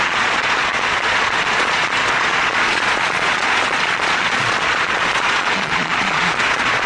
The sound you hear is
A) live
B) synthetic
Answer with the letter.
B